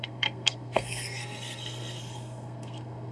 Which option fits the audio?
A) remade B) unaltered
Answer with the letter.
A